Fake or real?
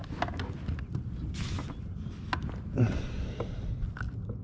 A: real